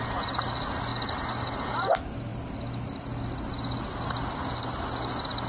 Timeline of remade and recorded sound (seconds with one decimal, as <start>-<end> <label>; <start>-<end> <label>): 0.0-5.5 recorded